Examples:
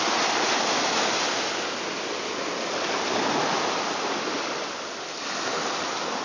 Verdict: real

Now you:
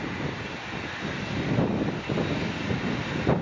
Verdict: real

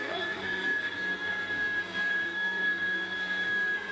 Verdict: fake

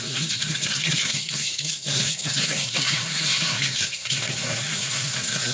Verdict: fake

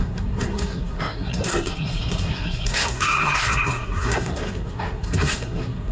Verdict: fake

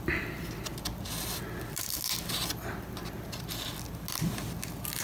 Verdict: real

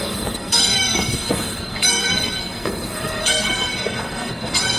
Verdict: fake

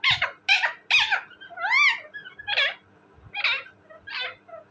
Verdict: real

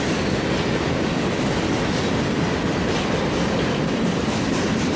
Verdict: real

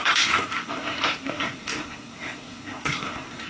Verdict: fake